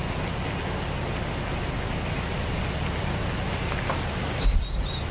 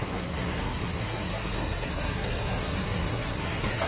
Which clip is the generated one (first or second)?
second